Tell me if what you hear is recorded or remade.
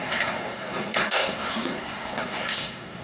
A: remade